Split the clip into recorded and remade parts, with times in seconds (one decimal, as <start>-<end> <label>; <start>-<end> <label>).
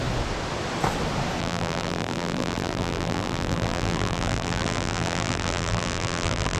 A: 0.0-1.4 recorded; 1.4-6.6 remade